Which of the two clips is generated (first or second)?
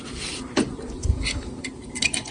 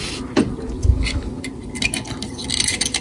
first